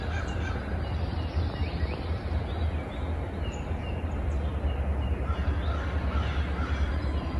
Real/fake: real